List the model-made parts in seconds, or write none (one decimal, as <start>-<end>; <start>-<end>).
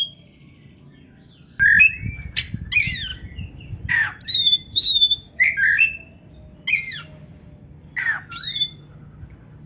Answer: 4.7-5.4